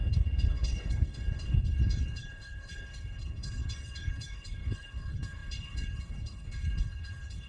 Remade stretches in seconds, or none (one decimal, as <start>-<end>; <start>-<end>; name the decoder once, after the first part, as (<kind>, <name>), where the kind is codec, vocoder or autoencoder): 0.0-7.5 (codec, HILCodec)